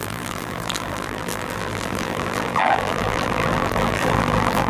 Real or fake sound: fake